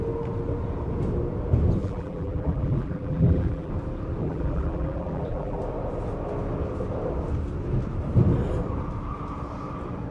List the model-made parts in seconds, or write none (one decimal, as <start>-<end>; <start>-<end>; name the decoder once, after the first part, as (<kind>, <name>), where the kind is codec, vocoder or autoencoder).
1.8-3.7 (vocoder, BigVGAN v2); 4.2-5.6